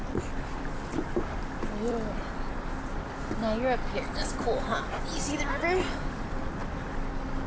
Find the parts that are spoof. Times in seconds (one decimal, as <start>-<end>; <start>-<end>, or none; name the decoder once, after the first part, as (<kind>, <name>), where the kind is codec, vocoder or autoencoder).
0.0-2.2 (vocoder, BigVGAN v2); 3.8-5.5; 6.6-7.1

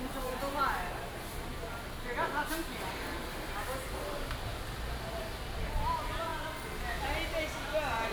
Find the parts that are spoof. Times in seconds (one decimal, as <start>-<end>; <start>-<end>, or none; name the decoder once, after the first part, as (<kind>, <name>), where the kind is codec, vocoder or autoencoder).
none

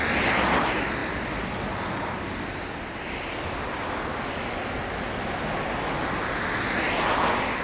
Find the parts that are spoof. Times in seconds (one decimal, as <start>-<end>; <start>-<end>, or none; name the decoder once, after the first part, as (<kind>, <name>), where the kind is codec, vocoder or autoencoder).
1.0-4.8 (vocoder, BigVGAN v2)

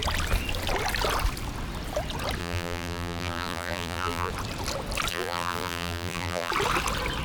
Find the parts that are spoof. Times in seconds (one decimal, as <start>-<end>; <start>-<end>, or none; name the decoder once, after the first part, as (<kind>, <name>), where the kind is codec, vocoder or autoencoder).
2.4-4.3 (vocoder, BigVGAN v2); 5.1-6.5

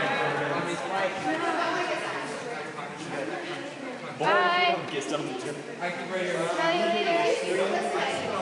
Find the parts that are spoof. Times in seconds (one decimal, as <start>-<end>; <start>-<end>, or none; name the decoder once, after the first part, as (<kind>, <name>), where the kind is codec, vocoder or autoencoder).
1.3-5.5 (vocoder, BigVGAN v2)

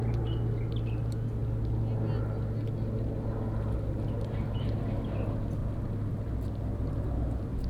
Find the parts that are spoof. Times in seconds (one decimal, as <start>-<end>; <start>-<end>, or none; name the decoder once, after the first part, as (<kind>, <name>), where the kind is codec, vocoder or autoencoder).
5.6-6.3 (vocoder, BigVGAN v2); 6.7-7.3

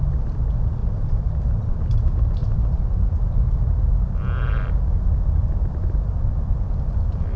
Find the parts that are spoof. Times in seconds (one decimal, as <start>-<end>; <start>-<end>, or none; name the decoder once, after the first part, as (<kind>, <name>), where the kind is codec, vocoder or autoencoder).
0.8-1.8 (vocoder, BigVGAN v2); 2.4-6.8

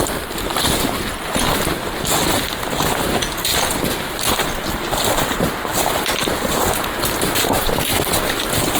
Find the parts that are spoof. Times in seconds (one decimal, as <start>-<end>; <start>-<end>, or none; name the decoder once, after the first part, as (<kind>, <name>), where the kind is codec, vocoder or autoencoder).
0.0-1.1 (vocoder, BigVGAN v2); 3.5-5.3; 5.7-6.3